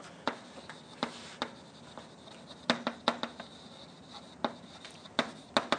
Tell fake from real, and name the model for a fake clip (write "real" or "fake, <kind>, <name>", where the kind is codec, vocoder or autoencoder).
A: real